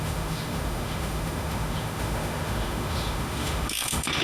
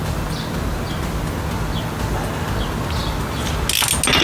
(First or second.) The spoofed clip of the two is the first